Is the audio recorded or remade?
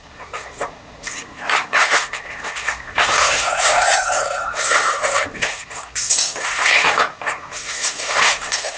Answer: remade